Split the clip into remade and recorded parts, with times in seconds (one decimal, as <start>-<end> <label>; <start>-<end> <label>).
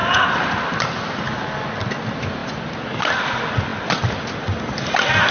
0.0-1.2 remade; 1.2-2.4 recorded; 2.4-3.3 remade; 3.3-5.3 recorded